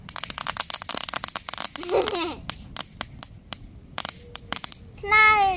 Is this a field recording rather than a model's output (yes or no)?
yes